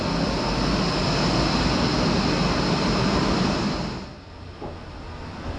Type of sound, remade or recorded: recorded